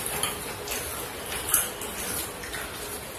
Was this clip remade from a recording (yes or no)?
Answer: no